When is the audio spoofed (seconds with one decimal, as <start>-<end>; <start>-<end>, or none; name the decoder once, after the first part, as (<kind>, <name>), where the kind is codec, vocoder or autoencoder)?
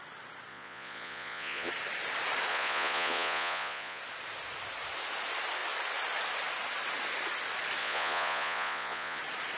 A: 0.5-1.7 (vocoder, Vocos); 2.5-4.0; 7.8-9.2